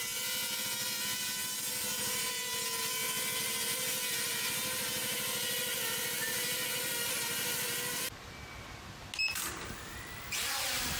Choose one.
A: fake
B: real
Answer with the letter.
B